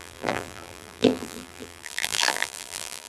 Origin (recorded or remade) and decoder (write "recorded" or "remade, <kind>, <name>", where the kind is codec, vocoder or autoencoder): remade, vocoder, BigVGAN v2